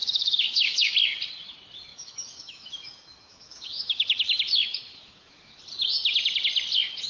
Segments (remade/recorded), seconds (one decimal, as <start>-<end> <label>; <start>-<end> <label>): 0.0-0.9 remade; 0.9-1.9 recorded; 1.9-5.6 remade; 5.6-7.1 recorded